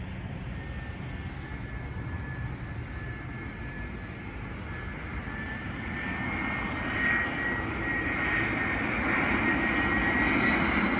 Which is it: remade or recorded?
recorded